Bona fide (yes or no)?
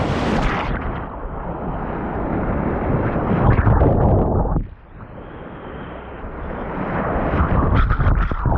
yes